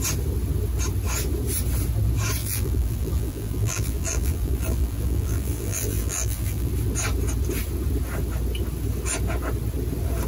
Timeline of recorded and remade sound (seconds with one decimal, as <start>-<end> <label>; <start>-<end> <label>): 0.0-2.4 recorded; 2.4-6.7 remade; 6.7-10.3 recorded